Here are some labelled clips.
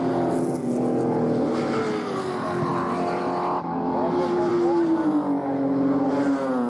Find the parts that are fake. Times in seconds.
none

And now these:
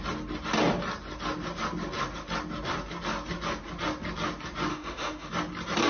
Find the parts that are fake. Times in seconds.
4.7-5.3 (autoencoder, DAC-VAE)

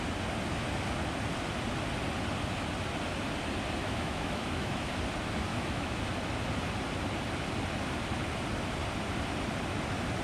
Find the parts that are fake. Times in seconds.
3.8-4.9 (autoencoder, DAC-VAE); 5.5-6.1

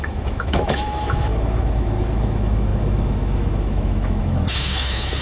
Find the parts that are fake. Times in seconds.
0.0-5.2 (autoencoder, DAC-VAE)